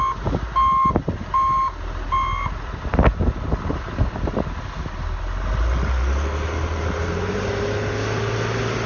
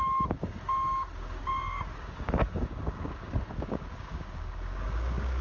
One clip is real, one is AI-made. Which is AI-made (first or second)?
second